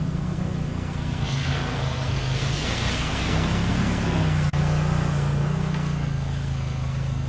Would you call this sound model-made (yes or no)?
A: yes